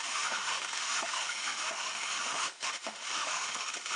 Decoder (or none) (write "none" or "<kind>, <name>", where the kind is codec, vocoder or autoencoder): autoencoder, DAC-VAE